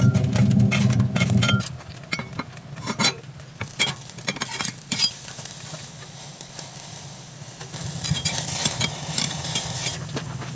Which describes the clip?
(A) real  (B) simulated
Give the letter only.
A